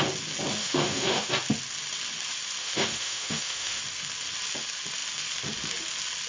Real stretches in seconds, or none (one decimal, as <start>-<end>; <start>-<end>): 0.0-0.6; 1.3-2.6; 3.8-6.3